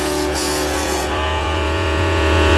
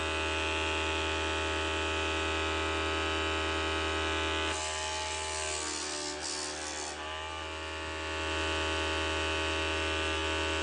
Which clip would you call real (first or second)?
second